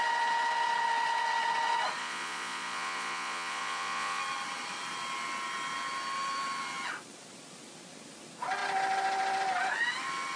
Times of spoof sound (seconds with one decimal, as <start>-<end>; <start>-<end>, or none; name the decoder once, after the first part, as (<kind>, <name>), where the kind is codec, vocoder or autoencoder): 2.0-4.2 (vocoder, Vocos)